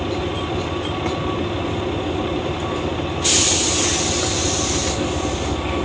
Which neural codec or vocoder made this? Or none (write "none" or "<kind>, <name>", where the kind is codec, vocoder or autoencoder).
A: none